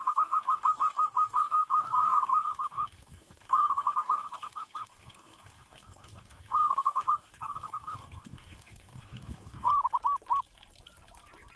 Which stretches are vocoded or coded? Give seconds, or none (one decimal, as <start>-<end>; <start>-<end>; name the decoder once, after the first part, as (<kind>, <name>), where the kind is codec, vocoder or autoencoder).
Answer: 0.0-9.7 (codec, DAC)